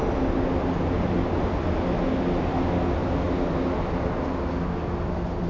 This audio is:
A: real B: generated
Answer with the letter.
A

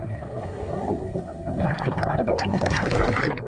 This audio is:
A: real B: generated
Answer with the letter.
B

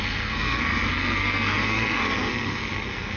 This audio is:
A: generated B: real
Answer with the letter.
A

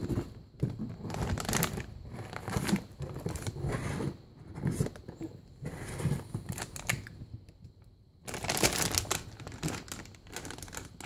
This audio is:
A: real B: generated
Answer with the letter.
A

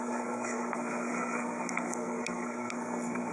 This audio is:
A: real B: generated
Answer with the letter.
B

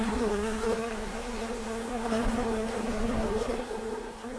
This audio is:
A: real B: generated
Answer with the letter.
B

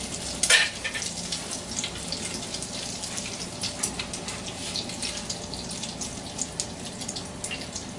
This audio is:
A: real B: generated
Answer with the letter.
A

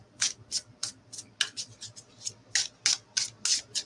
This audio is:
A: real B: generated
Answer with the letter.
A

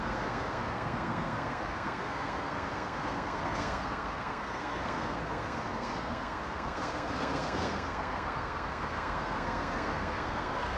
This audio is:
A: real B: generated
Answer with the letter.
B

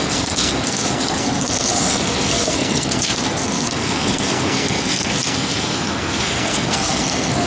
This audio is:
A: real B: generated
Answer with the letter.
B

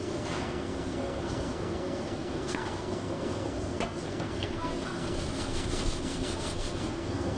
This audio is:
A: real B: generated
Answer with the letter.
B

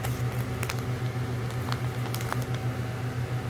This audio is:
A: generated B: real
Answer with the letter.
B